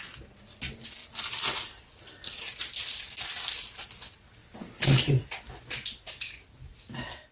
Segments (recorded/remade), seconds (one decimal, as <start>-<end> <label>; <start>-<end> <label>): 0.0-1.0 recorded; 1.0-2.5 remade; 2.5-4.4 recorded; 4.4-5.5 remade; 5.5-7.3 recorded